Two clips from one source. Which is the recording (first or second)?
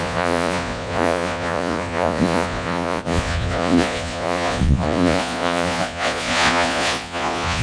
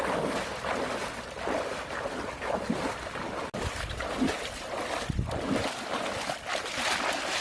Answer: second